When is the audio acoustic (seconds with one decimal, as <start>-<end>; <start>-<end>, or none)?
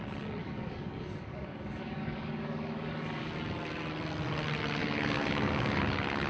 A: 0.0-0.4; 3.3-4.8; 5.8-6.3